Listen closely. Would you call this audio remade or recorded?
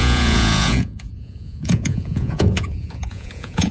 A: remade